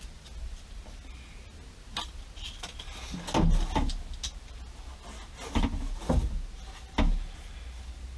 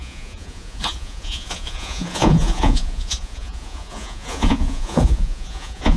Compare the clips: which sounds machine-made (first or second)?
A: second